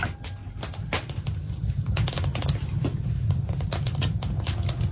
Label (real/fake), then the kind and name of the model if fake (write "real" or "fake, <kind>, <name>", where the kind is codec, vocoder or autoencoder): real